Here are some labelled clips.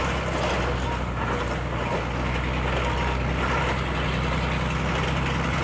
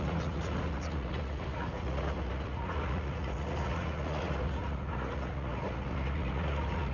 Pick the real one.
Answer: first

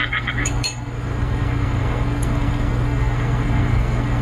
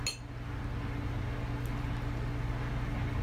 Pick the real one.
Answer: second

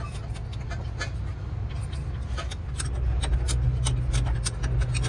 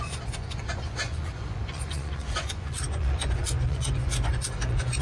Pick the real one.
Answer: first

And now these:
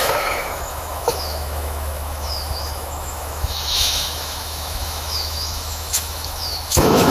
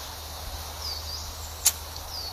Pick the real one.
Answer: second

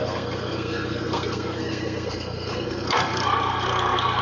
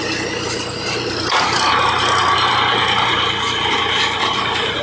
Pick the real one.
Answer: second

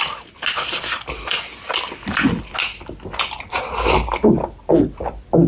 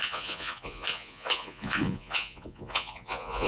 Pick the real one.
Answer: first